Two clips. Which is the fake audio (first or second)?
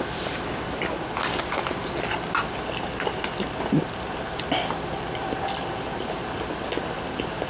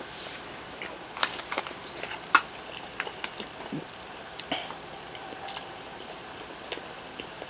second